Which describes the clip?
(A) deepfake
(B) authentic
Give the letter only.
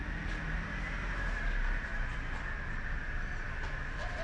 B